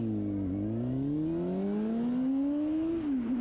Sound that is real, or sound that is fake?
real